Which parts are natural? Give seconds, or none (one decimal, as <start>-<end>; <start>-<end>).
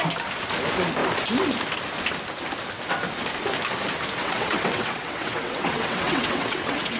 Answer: 0.0-4.2